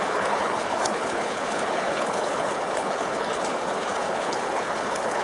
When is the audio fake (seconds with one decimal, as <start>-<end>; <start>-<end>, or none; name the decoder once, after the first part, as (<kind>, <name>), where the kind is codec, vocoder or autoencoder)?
0.0-5.2 (codec, HILCodec)